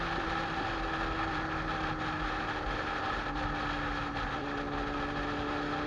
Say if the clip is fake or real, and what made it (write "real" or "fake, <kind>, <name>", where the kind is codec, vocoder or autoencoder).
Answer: real